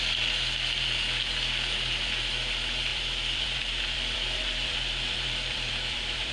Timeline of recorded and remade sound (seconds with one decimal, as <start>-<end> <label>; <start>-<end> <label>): 0.0-2.9 recorded; 2.9-6.3 remade